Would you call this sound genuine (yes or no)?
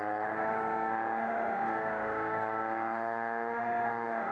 no